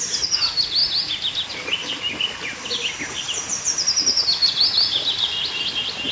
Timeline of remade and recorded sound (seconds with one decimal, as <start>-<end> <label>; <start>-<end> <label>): 0.0-6.1 recorded